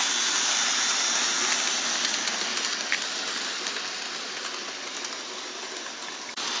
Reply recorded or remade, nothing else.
recorded